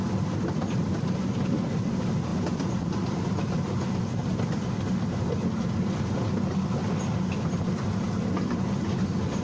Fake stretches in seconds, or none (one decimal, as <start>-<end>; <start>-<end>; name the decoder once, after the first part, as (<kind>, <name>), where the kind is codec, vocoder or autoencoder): none